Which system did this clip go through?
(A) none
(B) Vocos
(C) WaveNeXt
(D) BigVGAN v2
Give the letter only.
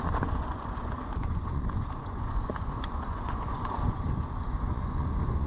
B